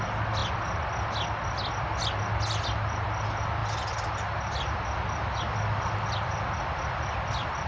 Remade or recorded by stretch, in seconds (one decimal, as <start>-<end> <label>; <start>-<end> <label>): 0.0-7.7 recorded

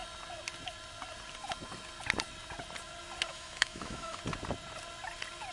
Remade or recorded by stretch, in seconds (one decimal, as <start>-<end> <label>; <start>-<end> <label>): 0.0-3.3 recorded; 3.3-4.2 remade; 4.2-5.5 recorded

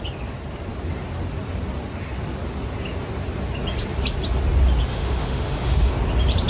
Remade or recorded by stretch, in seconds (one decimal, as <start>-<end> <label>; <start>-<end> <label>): 0.0-4.9 recorded; 4.9-5.9 remade; 5.9-6.5 recorded

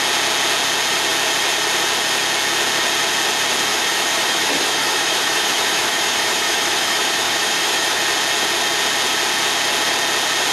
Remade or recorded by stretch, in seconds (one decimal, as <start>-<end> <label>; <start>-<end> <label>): 0.0-3.7 recorded; 3.7-8.0 remade; 8.0-10.5 recorded